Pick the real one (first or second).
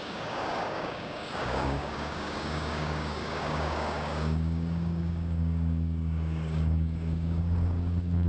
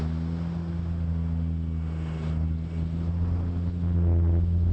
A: second